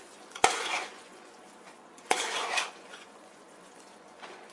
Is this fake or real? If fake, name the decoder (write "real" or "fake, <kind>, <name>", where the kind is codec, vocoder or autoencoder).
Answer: fake, vocoder, Vocos